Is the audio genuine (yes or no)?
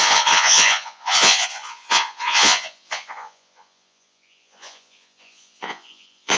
no